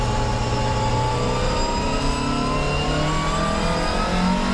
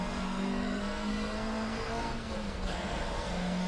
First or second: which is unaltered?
first